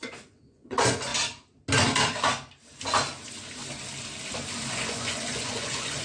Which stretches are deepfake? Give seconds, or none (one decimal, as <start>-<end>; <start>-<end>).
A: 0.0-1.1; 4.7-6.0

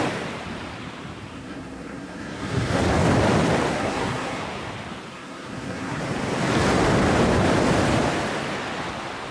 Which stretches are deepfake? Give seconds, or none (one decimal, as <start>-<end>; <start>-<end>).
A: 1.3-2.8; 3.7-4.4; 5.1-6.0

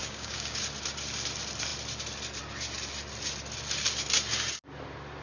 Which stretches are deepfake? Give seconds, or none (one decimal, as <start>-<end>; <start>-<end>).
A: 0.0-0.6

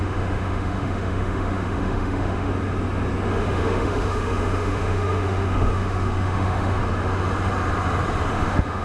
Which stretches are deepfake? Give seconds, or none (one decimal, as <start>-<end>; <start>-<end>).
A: 0.0-2.5; 3.3-6.8; 8.3-8.8

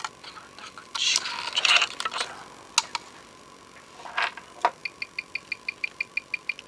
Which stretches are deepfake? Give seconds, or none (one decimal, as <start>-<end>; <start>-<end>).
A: none